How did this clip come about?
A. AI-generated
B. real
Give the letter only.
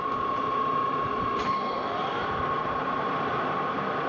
A